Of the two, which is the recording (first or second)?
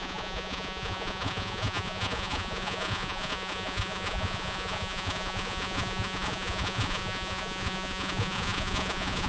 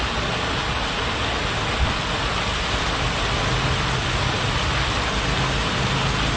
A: second